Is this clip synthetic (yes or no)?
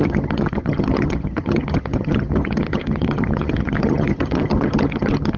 yes